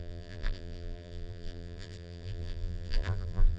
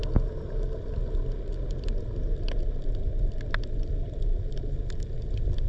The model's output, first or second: first